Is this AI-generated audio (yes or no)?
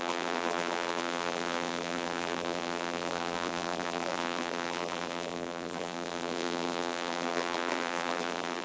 yes